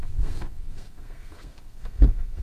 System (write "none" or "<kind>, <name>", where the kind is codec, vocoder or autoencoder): codec, SNAC